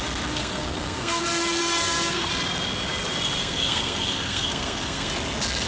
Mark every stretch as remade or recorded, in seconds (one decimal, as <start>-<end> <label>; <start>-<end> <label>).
0.0-0.4 recorded; 0.4-1.2 remade; 1.2-1.6 recorded; 1.6-2.3 remade; 2.3-3.4 recorded; 3.4-5.1 remade; 5.1-5.7 recorded